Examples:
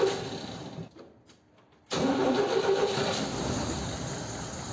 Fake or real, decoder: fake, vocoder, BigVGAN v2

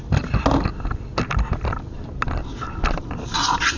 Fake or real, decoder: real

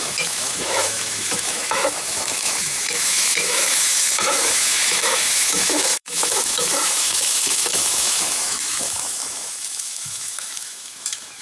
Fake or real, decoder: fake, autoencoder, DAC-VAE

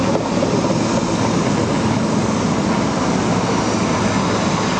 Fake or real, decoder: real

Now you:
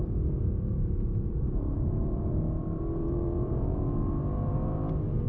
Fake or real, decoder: fake, vocoder, BigVGAN v2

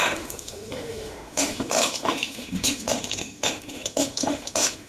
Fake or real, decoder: fake, autoencoder, DAC-VAE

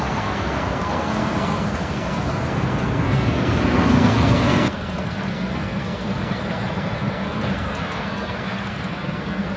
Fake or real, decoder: fake, codec, SNAC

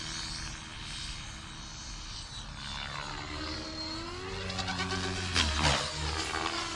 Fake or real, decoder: real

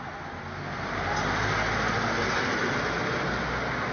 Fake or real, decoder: real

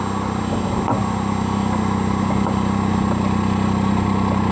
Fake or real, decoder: real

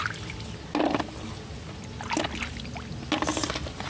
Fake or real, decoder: real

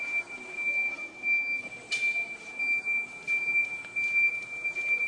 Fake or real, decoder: real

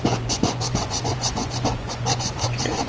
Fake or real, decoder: fake, vocoder, Vocos